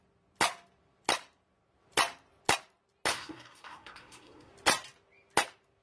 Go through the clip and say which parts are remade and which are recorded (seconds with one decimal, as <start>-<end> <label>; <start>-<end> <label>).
0.0-3.1 recorded; 3.1-4.5 remade; 4.5-5.8 recorded